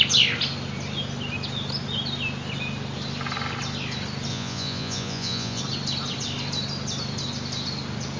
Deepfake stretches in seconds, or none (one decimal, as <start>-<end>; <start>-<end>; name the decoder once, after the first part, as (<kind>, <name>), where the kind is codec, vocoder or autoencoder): 4.3-5.6 (vocoder, Vocos)